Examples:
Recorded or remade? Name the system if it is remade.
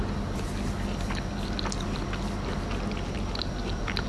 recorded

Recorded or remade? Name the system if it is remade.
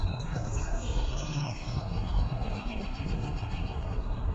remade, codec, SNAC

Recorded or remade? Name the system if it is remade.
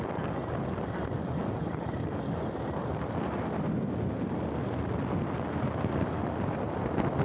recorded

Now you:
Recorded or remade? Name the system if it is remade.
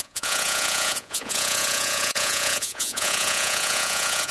remade, vocoder, Vocos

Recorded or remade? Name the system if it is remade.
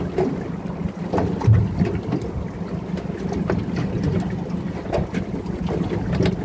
recorded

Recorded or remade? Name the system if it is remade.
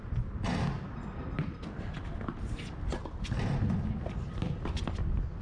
recorded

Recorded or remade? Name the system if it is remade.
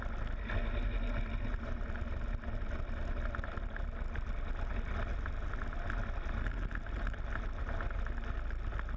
recorded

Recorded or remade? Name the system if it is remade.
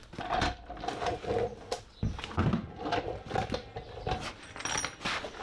recorded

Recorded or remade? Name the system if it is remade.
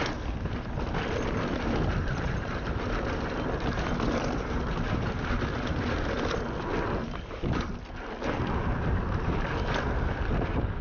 recorded